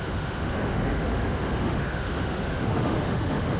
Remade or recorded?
remade